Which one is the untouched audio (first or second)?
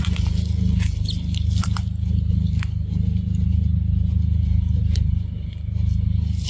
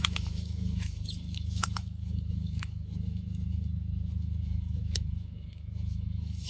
first